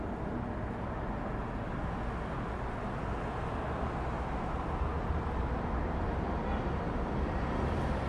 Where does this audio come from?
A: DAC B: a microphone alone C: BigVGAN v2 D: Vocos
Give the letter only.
B